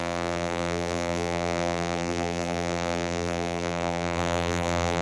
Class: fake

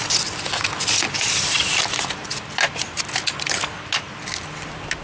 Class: real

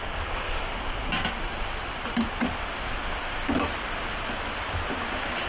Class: real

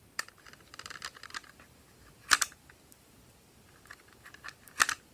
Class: real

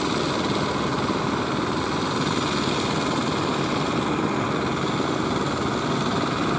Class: real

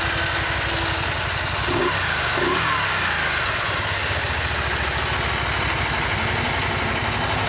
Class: real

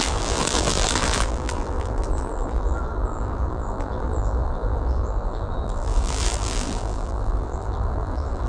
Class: fake